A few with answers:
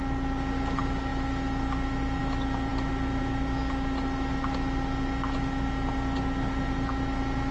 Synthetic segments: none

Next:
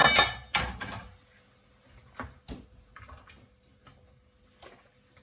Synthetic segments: none

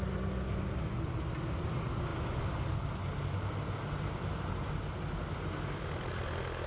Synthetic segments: none

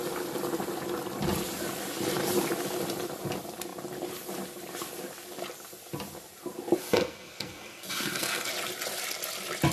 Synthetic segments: 6.8-8.5

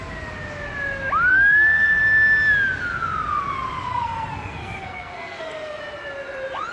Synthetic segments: 1.3-2.0; 3.9-5.8